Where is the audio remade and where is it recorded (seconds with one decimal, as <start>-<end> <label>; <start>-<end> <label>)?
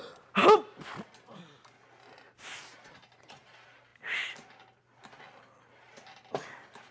0.0-6.9 recorded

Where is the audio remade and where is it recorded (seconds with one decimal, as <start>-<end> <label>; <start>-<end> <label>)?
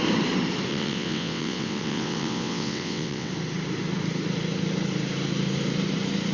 0.0-0.7 recorded; 0.7-3.3 remade; 3.3-6.3 recorded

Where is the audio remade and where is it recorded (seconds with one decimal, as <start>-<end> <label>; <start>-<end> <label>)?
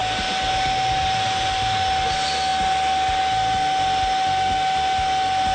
0.0-5.5 recorded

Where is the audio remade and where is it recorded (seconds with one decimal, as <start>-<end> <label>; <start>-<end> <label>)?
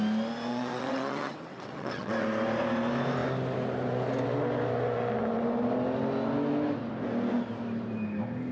0.0-0.5 recorded; 0.5-2.1 remade; 2.1-8.5 recorded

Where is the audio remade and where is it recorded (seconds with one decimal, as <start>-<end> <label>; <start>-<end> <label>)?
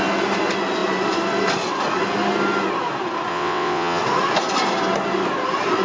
0.0-3.3 recorded; 3.3-4.0 remade; 4.0-5.8 recorded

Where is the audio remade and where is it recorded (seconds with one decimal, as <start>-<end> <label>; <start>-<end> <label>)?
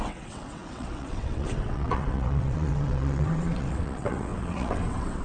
0.0-5.2 remade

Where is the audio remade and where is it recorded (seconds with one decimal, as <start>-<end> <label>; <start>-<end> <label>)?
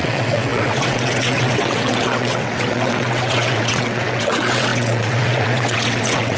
0.0-6.4 remade